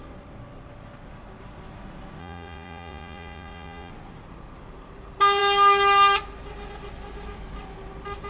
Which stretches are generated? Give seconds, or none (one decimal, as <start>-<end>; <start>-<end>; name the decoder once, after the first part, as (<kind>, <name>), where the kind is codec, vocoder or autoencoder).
2.2-3.9 (vocoder, Vocos)